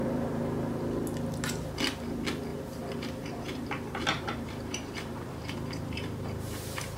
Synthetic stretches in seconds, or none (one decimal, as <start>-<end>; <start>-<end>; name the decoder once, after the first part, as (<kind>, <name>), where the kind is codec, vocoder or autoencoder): 0.0-0.8 (vocoder, BigVGAN v2); 2.5-7.0